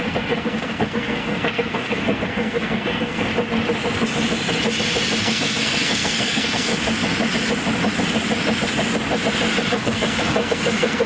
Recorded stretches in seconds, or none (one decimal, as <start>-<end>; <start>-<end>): 3.3-5.2; 6.7-9.7